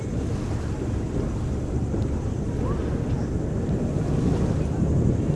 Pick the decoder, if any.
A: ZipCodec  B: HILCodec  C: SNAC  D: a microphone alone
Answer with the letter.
D